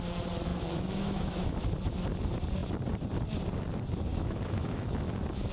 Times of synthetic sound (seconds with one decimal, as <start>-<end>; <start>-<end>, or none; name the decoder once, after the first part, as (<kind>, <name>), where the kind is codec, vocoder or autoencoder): 0.5-1.6 (autoencoder, DAC-VAE); 4.1-4.9